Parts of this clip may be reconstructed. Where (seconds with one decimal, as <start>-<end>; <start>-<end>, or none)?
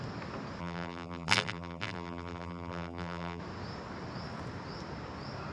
0.6-3.4